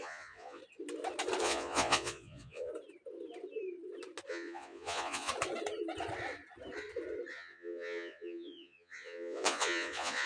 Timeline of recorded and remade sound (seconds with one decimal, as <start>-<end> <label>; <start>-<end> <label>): 0.0-0.6 remade; 0.6-1.4 recorded; 1.4-2.7 remade; 2.7-4.3 recorded; 4.3-5.3 remade; 5.3-7.3 recorded; 7.3-10.3 remade